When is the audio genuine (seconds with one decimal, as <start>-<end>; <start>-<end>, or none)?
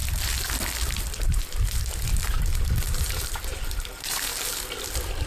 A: 0.0-2.3; 4.3-5.3